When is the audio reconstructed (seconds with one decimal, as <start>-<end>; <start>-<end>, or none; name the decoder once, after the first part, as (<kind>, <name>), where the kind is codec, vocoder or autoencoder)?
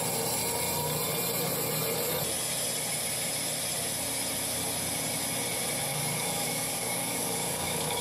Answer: 5.9-8.0 (codec, DAC)